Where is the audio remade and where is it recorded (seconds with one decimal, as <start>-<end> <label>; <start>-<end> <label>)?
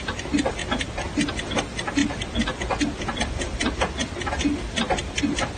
0.0-5.6 recorded